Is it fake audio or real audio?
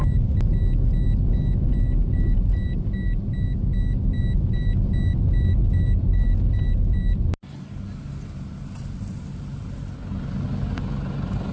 real